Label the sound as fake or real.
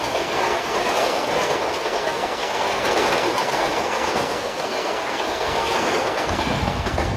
fake